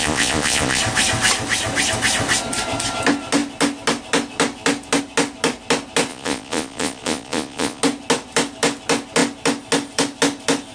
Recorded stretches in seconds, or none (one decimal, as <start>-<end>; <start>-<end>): 0.8-6.1; 7.8-10.7

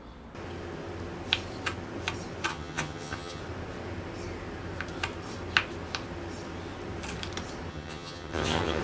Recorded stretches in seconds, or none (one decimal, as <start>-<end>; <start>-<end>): 0.0-2.5; 3.4-7.7

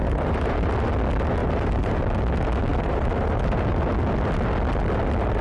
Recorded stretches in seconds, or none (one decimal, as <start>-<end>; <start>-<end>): 0.7-1.4; 2.0-2.7; 3.8-5.4

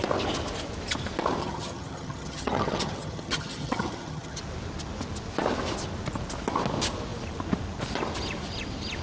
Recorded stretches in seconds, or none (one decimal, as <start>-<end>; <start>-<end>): 0.0-1.4; 4.4-9.0

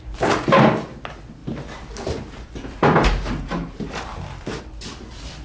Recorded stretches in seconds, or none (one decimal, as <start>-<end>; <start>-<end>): 0.0-1.4; 4.6-5.4

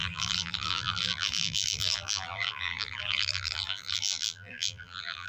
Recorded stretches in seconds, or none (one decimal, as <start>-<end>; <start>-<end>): none